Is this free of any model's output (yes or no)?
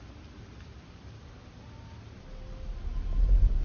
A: yes